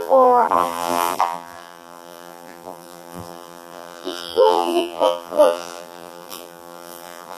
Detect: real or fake fake